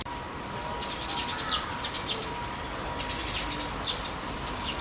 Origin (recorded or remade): recorded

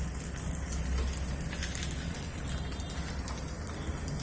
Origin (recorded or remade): recorded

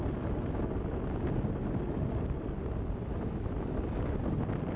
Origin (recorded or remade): recorded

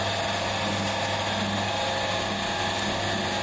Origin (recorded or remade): recorded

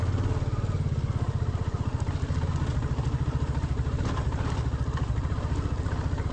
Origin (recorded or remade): recorded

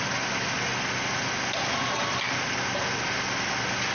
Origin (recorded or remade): recorded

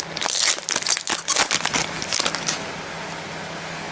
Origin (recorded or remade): recorded